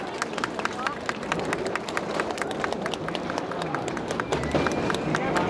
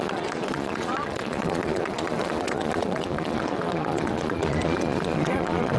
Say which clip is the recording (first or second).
first